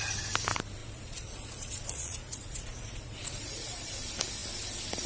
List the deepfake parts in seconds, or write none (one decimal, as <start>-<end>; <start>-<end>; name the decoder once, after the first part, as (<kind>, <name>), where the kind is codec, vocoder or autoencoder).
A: 0.8-3.9 (vocoder, Vocos)